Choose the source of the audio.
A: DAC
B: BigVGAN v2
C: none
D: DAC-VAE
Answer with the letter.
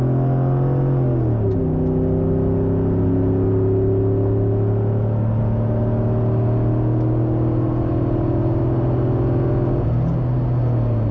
C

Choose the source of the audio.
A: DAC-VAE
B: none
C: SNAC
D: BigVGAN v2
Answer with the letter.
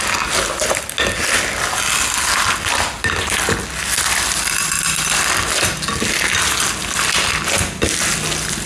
B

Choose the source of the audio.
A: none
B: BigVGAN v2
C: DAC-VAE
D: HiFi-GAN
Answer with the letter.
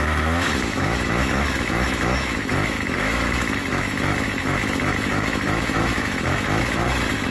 C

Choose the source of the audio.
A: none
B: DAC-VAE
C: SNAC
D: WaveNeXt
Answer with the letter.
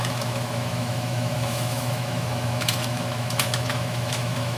B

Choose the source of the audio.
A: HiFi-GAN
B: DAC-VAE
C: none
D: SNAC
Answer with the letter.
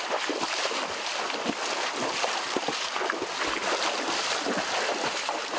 C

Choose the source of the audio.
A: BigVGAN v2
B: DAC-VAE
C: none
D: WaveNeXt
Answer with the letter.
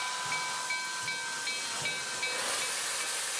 C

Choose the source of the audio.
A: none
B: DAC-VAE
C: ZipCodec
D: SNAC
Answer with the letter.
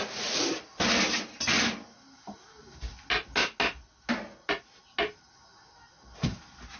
A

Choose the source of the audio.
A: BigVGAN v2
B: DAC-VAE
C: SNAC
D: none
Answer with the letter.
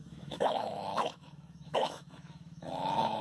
B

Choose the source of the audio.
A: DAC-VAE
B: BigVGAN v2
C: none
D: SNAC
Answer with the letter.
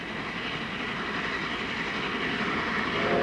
C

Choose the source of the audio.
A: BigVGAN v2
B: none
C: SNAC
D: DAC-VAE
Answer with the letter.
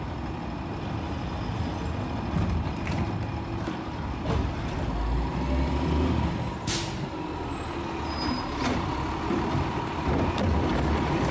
B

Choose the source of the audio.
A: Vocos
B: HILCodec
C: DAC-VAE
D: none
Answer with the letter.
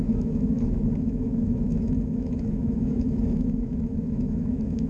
C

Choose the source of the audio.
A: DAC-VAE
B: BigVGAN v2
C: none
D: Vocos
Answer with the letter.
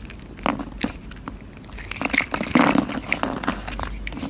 C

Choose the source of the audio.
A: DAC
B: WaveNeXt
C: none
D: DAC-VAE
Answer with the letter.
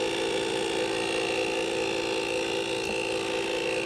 C